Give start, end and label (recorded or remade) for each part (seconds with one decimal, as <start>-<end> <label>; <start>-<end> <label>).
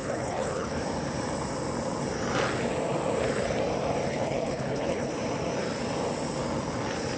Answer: 0.0-0.8 remade; 0.8-4.1 recorded; 4.1-5.1 remade; 5.1-7.2 recorded